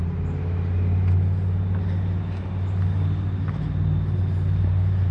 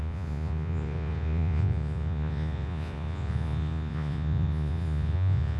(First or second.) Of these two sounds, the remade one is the second